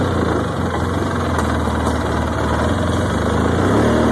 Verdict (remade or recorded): recorded